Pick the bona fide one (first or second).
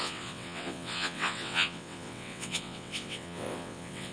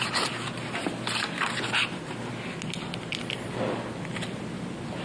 second